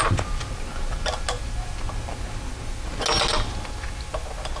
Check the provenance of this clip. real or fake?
real